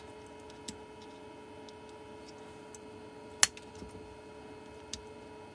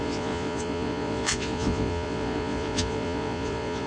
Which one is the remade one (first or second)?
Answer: second